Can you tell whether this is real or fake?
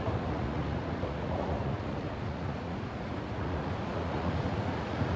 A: fake